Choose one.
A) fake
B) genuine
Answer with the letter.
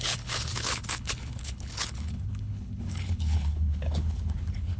A